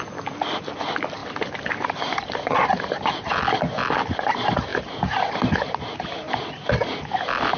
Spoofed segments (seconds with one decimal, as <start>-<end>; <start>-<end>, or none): 1.2-3.4; 4.7-5.3